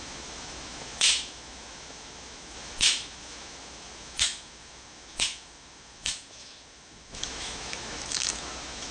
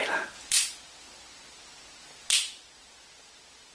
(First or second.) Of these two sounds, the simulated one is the first